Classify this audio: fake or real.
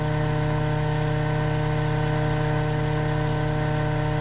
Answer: real